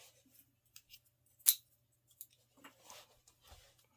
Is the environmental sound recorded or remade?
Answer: recorded